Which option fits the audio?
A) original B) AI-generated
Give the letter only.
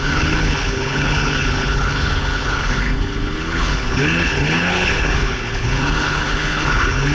B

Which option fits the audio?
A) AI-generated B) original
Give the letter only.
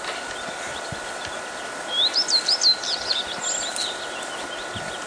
B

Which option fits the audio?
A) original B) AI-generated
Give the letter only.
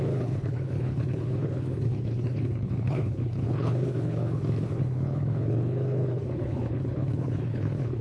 B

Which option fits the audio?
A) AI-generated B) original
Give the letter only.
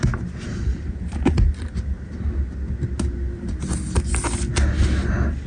B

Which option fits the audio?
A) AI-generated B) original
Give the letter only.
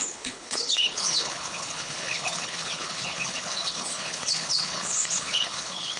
A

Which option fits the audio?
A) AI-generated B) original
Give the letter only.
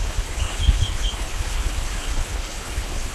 A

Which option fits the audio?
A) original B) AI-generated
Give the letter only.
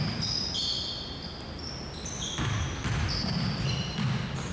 A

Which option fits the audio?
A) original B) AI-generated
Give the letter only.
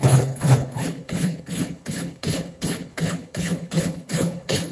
B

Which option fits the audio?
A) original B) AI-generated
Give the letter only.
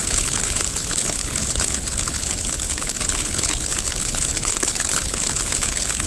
B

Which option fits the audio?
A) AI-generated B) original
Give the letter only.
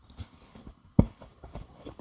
A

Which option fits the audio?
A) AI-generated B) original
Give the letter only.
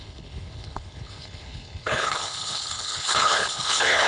A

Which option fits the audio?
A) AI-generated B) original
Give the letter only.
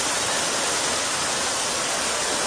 B